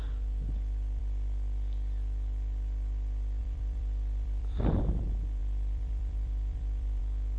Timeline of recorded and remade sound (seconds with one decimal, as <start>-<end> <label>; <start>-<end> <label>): 0.0-3.4 recorded; 3.4-5.0 remade; 5.0-5.4 recorded; 5.4-7.0 remade; 7.0-7.4 recorded